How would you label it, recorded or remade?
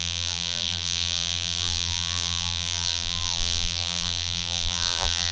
remade